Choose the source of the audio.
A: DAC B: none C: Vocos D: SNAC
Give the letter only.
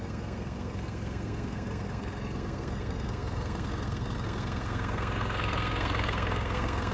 D